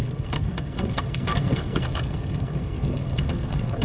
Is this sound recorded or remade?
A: remade